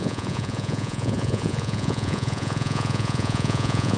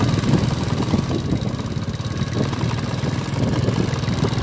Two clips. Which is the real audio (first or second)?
second